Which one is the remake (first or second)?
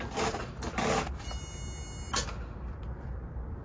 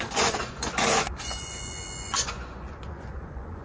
second